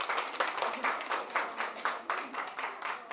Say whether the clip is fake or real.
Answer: real